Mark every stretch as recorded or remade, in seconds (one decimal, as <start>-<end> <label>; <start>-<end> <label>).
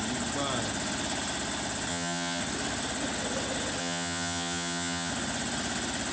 0.0-1.9 recorded; 1.9-2.4 remade; 2.4-3.8 recorded; 3.8-5.1 remade; 5.1-6.1 recorded